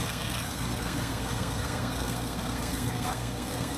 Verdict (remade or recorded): remade